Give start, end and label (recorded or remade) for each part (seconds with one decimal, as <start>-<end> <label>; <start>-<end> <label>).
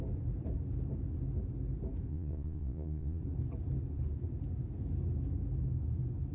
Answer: 0.0-2.1 recorded; 2.1-3.2 remade; 3.2-6.3 recorded